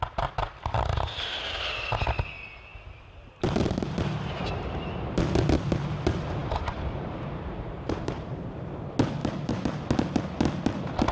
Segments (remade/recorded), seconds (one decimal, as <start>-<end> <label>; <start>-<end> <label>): 0.0-2.7 recorded; 2.7-5.2 remade; 5.2-6.4 recorded; 6.4-8.3 remade; 8.3-9.2 recorded; 9.2-9.8 remade; 9.8-11.1 recorded